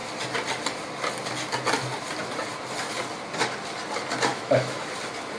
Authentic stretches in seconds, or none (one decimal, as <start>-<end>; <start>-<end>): 0.0-4.3; 4.9-5.4